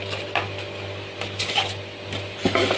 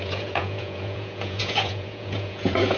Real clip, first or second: first